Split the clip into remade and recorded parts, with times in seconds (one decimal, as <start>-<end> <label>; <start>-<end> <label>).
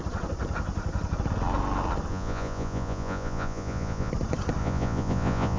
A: 0.0-2.1 recorded; 2.1-4.1 remade; 4.1-4.6 recorded; 4.6-5.6 remade